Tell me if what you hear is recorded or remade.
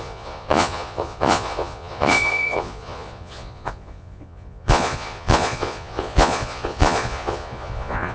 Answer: remade